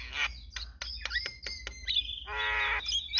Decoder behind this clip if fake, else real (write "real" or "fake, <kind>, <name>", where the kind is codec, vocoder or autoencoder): real